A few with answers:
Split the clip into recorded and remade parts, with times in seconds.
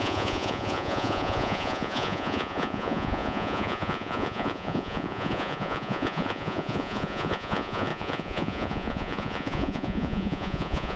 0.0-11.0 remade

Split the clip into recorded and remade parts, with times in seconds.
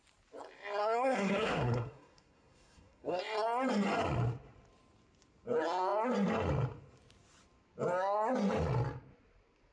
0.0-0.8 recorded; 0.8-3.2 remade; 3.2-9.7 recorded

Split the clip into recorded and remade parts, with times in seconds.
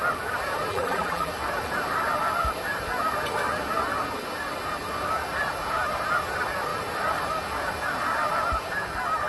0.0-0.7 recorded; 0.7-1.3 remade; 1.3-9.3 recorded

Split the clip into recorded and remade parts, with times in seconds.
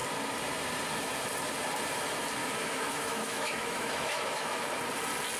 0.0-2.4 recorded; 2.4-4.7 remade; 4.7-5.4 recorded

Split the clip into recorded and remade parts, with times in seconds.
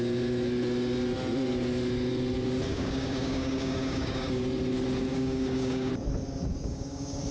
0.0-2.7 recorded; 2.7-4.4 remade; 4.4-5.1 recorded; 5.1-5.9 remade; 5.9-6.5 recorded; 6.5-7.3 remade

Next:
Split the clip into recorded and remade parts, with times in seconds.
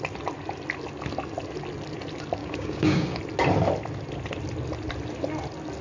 0.0-2.4 recorded; 2.4-3.2 remade; 3.2-5.8 recorded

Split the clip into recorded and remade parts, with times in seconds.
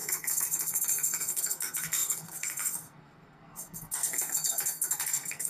0.0-5.5 remade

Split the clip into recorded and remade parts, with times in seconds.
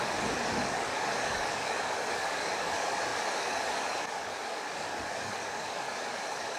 0.0-6.6 remade